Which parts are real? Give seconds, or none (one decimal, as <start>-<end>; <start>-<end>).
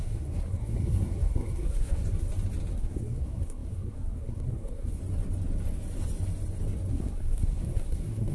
2.0-2.7; 5.0-6.9